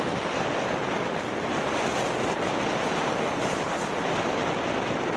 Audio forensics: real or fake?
real